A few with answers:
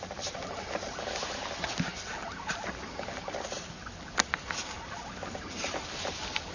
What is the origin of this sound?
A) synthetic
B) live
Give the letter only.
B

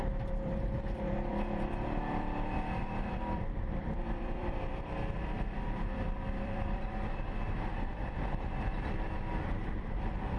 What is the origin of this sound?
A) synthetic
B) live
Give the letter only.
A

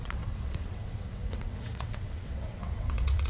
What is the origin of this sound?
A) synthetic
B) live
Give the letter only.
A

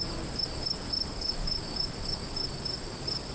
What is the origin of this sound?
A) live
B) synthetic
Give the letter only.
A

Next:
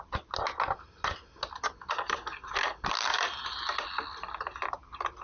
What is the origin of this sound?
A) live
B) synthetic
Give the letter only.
A